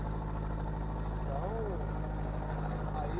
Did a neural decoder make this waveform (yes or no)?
no